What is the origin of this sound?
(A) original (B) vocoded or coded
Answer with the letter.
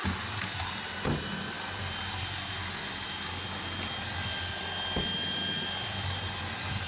A